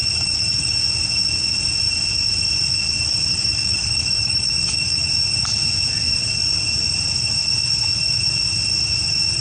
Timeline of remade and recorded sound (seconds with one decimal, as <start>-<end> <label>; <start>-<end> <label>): 0.0-0.7 remade; 0.7-3.3 recorded; 3.3-5.1 remade; 5.1-9.4 recorded